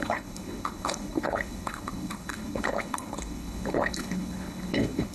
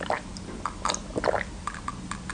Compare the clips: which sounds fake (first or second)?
first